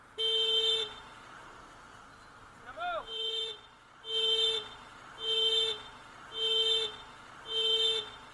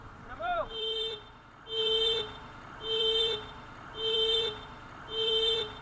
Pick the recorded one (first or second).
first